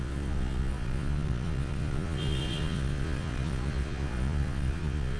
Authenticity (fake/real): fake